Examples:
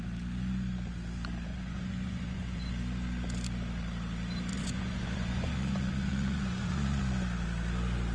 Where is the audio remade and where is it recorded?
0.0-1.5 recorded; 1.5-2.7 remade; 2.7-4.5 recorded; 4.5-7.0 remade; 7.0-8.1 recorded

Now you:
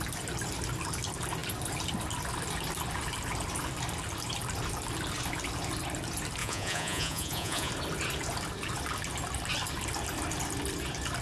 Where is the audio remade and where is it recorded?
0.0-6.4 recorded; 6.4-7.7 remade; 7.7-11.2 recorded

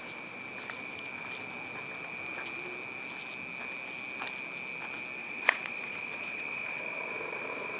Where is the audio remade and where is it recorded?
0.0-5.2 recorded; 5.2-7.8 remade